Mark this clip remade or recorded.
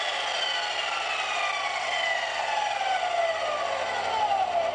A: recorded